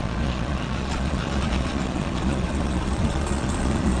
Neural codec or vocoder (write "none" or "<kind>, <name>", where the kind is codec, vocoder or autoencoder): vocoder, Vocos